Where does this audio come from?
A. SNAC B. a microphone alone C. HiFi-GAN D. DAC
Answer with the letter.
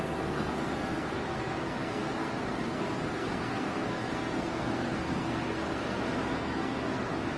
A